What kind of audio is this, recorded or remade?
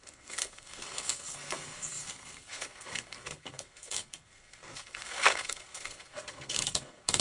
remade